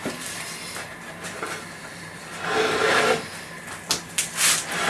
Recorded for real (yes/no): yes